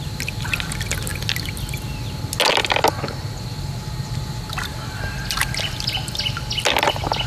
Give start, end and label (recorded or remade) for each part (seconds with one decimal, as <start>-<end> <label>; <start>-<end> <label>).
0.0-7.3 recorded

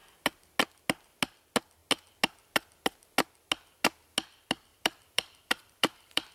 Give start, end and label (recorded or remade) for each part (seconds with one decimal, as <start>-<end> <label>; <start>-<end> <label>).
0.0-4.7 recorded; 4.7-6.3 remade

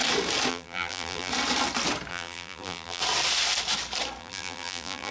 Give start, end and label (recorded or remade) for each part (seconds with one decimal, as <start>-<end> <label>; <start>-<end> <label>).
0.0-0.5 recorded; 0.5-1.3 remade; 1.3-2.1 recorded; 2.1-3.0 remade; 3.0-4.2 recorded; 4.2-5.1 remade

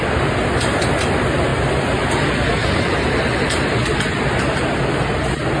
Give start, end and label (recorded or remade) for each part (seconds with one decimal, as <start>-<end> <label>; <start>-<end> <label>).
0.0-2.6 recorded; 2.6-3.7 remade; 3.7-5.6 recorded

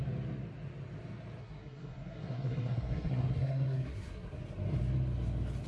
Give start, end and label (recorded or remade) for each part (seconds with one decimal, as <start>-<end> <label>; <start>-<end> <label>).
0.0-1.4 recorded; 1.4-4.4 remade; 4.4-5.7 recorded